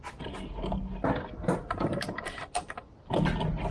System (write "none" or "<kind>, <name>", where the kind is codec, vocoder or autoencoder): none